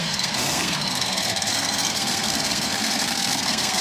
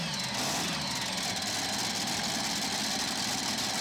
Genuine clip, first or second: second